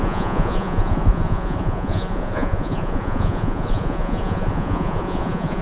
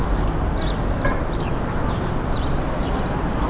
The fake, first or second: first